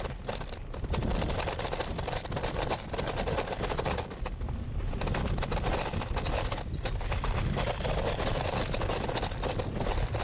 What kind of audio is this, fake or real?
real